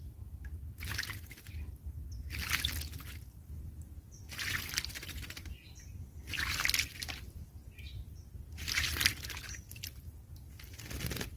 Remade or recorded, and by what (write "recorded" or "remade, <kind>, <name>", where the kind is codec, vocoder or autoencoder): recorded